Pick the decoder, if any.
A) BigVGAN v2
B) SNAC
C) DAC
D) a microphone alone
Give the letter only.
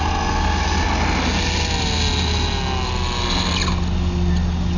D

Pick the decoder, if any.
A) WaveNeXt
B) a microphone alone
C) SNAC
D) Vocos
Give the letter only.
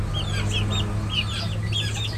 B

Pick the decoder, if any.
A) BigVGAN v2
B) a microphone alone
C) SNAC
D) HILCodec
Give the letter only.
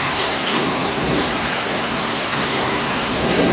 C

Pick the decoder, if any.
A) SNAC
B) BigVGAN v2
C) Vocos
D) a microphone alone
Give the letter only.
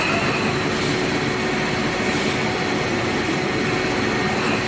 D